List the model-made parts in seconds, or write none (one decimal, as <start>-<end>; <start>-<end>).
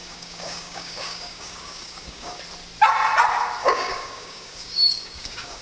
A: 0.0-2.4; 3.6-5.6